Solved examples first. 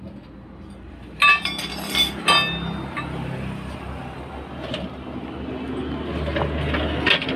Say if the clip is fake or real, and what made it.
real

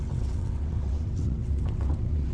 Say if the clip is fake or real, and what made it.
fake, vocoder, WaveNeXt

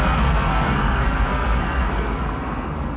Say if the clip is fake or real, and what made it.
fake, codec, SNAC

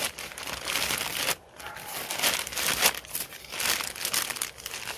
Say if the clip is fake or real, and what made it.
real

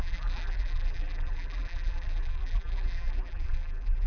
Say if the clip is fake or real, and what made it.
fake, vocoder, BigVGAN v2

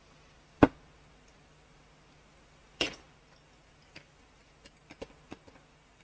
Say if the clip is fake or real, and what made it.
fake, vocoder, BigVGAN v2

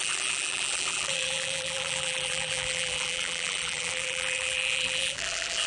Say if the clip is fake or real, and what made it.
fake, vocoder, BigVGAN v2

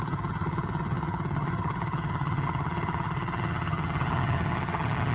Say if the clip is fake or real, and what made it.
fake, vocoder, HiFi-GAN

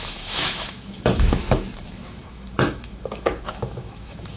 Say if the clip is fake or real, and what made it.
fake, autoencoder, DAC-VAE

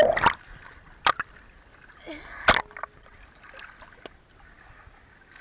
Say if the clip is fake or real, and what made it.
real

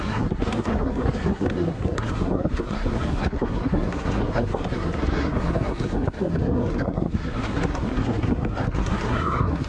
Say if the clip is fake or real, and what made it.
fake, codec, SNAC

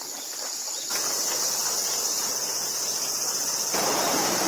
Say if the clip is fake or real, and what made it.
real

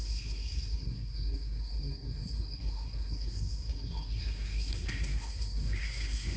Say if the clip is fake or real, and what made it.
fake, codec, SNAC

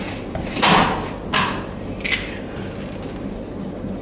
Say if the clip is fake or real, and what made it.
real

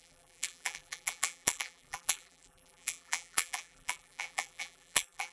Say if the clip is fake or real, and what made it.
fake, vocoder, BigVGAN v2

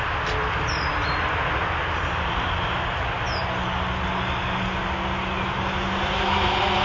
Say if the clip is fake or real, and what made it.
real